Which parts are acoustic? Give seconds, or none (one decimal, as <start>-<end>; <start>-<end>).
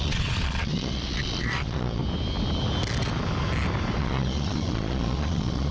2.0-4.0